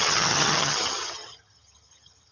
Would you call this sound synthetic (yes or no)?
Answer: yes